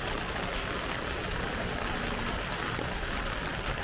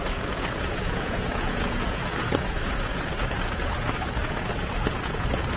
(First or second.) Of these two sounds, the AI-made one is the second